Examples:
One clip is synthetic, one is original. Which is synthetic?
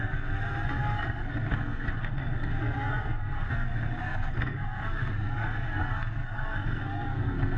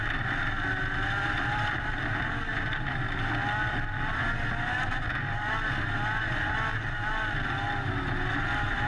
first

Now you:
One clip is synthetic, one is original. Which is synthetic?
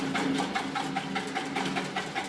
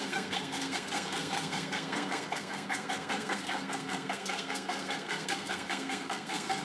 second